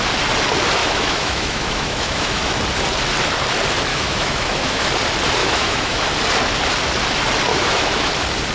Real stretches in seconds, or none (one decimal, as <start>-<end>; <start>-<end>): 0.0-0.8; 2.6-3.9; 4.9-5.4; 6.0-7.5; 8.1-8.5